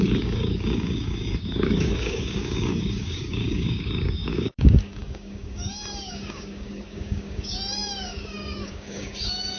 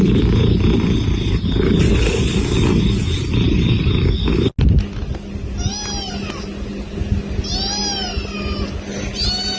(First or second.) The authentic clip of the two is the second